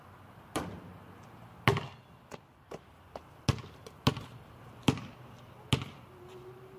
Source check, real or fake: real